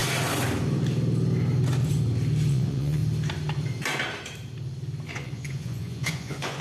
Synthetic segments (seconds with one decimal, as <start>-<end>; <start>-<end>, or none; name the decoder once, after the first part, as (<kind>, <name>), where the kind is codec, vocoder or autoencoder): 2.5-3.0 (vocoder, Vocos); 5.1-6.6